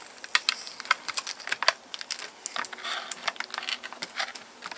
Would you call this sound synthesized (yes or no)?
no